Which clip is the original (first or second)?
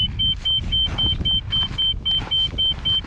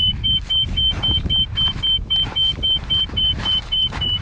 first